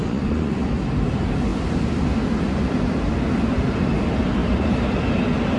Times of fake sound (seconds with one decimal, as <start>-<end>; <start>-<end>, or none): 0.0-0.7